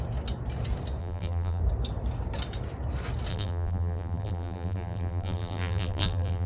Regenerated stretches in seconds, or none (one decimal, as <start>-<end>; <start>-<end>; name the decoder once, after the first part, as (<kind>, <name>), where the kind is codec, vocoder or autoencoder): 1.0-1.6 (vocoder, BigVGAN v2); 3.3-6.5